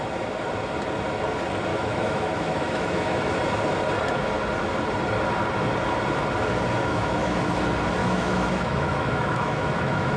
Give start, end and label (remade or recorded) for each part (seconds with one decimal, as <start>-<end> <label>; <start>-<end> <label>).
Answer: 0.0-1.7 recorded; 1.7-3.4 remade; 3.4-6.9 recorded; 6.9-7.4 remade; 7.4-8.0 recorded; 8.0-10.2 remade